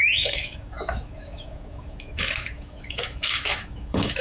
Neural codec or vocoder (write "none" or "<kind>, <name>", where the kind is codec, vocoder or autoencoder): autoencoder, DAC-VAE